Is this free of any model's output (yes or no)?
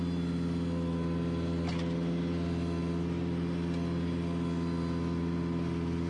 yes